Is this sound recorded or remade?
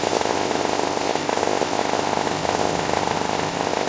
remade